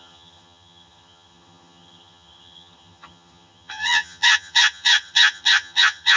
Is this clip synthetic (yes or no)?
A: yes